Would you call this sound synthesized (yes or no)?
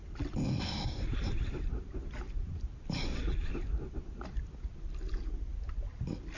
no